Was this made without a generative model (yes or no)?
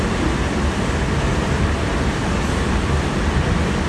yes